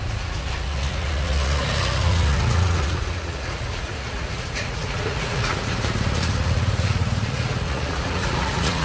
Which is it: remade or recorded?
remade